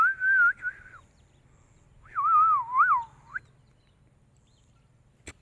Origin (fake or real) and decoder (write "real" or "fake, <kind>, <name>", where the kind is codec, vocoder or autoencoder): real